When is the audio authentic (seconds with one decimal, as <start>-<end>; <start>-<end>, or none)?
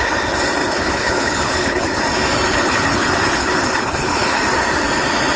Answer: 0.0-0.6; 2.0-2.5; 4.4-5.4